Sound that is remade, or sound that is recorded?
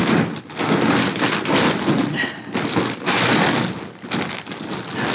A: recorded